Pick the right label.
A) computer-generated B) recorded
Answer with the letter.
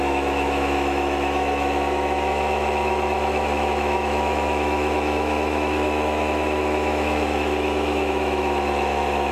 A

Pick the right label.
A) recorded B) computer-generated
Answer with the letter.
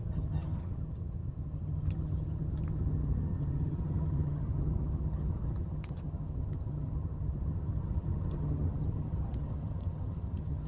B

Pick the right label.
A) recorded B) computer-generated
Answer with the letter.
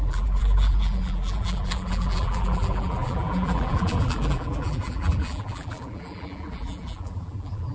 B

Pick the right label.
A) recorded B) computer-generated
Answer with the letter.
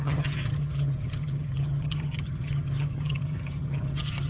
B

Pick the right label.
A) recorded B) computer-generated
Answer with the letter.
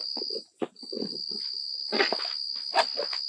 A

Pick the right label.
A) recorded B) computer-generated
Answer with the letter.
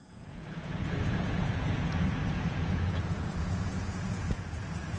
B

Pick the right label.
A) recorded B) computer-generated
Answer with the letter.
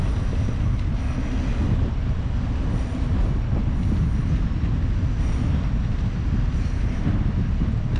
A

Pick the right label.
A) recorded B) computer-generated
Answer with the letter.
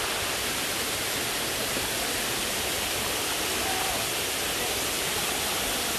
B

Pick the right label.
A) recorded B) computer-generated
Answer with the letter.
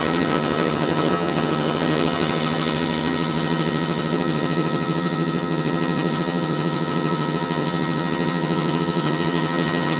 B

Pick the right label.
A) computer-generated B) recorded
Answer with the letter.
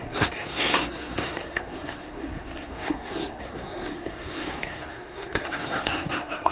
A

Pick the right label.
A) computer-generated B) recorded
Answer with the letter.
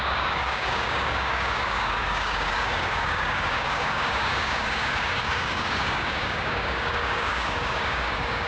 A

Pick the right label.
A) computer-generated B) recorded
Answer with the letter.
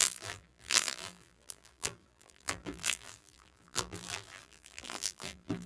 A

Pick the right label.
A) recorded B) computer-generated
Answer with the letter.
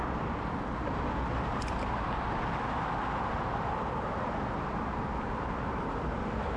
A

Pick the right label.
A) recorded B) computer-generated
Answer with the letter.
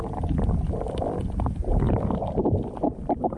A